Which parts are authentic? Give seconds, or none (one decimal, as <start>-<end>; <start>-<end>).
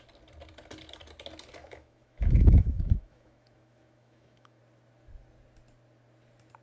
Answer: 0.0-1.6; 4.6-6.6